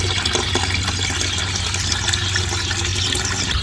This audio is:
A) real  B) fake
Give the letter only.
A